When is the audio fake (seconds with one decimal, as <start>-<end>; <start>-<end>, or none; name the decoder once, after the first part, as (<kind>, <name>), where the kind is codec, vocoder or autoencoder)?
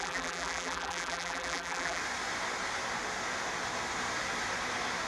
0.0-2.0 (vocoder, BigVGAN v2)